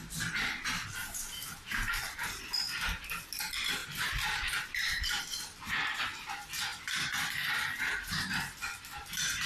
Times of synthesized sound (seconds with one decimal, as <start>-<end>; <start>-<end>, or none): 1.0-2.5; 3.8-5.2